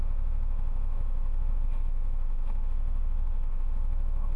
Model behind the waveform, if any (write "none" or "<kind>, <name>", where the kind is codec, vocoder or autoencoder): autoencoder, DAC-VAE